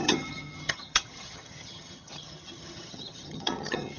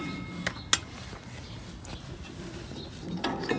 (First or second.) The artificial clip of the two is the first